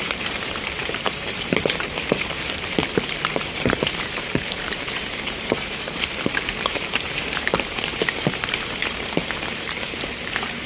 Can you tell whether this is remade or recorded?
remade